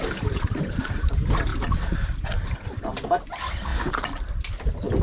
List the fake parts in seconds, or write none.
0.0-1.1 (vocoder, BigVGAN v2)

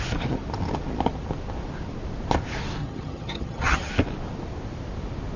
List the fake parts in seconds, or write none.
2.8-3.9 (vocoder, HiFi-GAN)

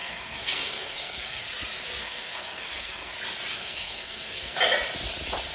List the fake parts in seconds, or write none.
0.0-1.4 (codec, SNAC); 2.0-3.1; 3.5-4.6

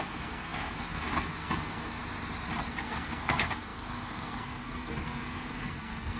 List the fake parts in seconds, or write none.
0.0-2.0 (codec, SNAC); 2.6-6.2

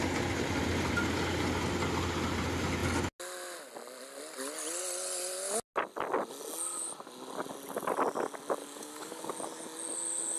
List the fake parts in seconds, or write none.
8.6-9.2 (codec, DAC)

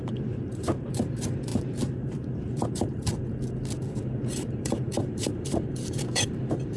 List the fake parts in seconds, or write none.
0.0-3.1 (vocoder, BigVGAN v2); 4.3-6.8

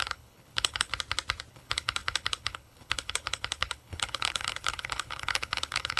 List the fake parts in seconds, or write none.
0.0-0.9 (codec, HILCodec); 1.5-6.0

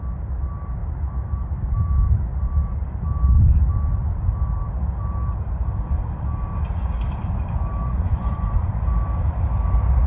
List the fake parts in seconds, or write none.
7.8-8.7 (vocoder, Vocos)